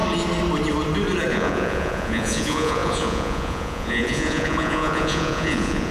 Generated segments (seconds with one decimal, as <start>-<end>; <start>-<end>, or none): 1.3-5.9